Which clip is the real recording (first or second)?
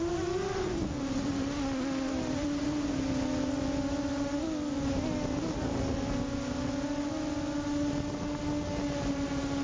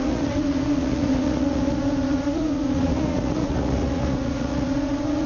first